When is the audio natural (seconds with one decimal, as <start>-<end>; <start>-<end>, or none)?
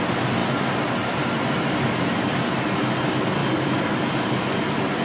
0.0-0.4; 2.6-3.4; 4.4-5.0